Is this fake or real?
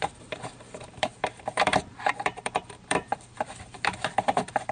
fake